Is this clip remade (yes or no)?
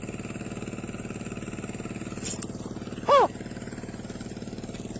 no